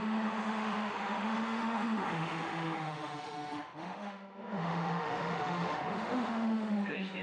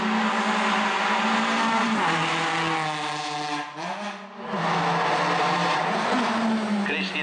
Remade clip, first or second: first